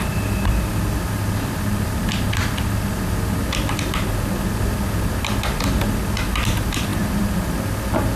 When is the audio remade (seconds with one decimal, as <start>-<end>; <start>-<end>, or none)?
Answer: none